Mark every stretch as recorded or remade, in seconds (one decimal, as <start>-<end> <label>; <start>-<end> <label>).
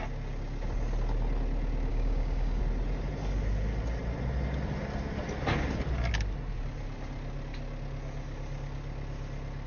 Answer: 0.0-1.9 recorded; 1.9-2.6 remade; 2.6-9.7 recorded